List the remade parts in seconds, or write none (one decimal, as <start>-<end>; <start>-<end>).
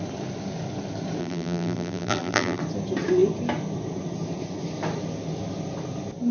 1.2-2.6